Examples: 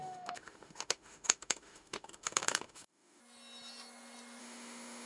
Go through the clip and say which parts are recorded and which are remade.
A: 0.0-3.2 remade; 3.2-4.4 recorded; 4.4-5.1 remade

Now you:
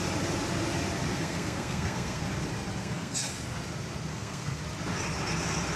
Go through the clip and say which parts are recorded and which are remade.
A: 0.0-1.1 recorded; 1.1-2.2 remade; 2.2-2.8 recorded; 2.8-3.3 remade; 3.3-4.1 recorded; 4.1-4.6 remade; 4.6-5.8 recorded

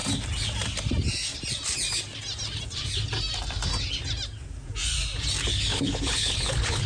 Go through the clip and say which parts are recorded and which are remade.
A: 0.0-5.7 recorded; 5.7-6.9 remade

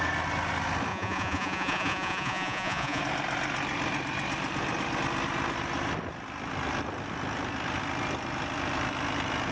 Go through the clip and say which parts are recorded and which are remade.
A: 0.0-0.9 recorded; 0.9-3.0 remade; 3.0-9.5 recorded

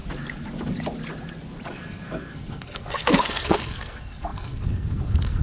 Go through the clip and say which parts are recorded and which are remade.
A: 0.0-1.7 recorded; 1.7-5.4 remade

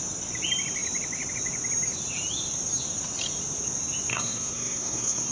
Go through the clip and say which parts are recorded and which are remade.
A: 0.0-4.1 recorded; 4.1-5.3 remade

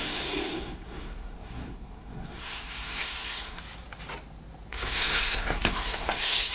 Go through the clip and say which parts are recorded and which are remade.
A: 0.0-3.6 remade; 3.6-4.7 recorded; 4.7-6.5 remade